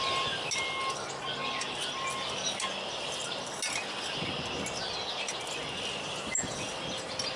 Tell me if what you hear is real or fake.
real